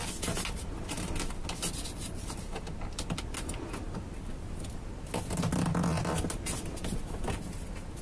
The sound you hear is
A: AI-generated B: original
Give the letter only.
B